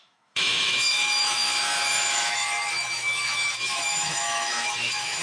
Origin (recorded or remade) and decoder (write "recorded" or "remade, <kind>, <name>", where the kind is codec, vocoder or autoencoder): remade, autoencoder, DAC-VAE